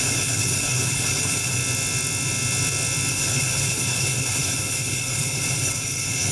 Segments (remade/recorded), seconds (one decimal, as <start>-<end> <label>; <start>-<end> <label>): 0.0-1.6 remade; 1.6-3.1 recorded; 3.1-6.3 remade